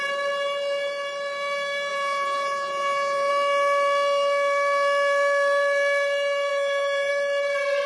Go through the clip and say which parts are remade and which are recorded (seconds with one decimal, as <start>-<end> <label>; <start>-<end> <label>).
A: 0.0-1.9 recorded; 1.9-3.3 remade; 3.3-6.5 recorded; 6.5-7.1 remade; 7.1-7.9 recorded